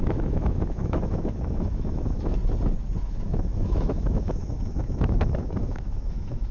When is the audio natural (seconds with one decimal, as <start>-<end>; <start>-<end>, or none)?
2.4-3.1